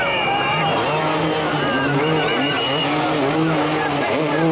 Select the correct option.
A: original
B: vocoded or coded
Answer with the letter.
A